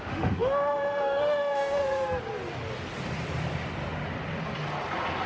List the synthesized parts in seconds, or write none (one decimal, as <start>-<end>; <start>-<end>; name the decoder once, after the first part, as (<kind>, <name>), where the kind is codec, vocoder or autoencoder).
0.0-1.8 (autoencoder, DAC-VAE)